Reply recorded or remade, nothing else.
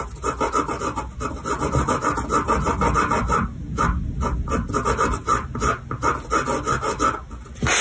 recorded